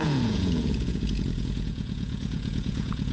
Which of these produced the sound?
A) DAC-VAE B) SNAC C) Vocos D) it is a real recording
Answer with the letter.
C